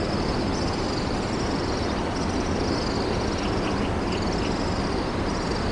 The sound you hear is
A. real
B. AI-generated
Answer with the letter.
A